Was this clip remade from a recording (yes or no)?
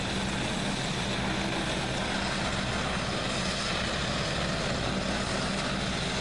no